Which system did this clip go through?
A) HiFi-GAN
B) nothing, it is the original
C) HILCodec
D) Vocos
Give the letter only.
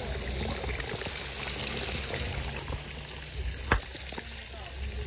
B